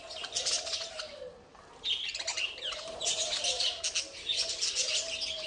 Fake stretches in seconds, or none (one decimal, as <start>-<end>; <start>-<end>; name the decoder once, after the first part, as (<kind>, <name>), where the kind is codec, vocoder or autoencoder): 2.3-3.8 (vocoder, BigVGAN v2)